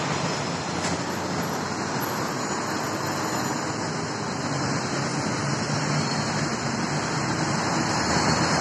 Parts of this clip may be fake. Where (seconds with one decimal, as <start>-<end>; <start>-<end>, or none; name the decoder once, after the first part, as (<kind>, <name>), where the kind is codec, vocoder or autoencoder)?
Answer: none